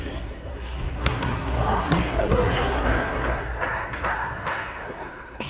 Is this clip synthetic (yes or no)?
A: yes